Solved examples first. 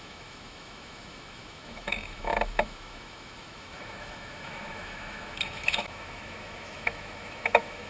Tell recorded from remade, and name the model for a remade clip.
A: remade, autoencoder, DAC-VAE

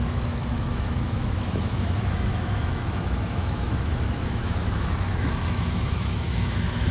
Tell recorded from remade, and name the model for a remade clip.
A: remade, autoencoder, DAC-VAE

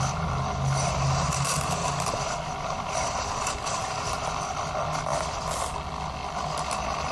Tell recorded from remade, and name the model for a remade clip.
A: recorded